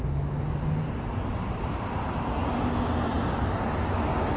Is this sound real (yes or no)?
yes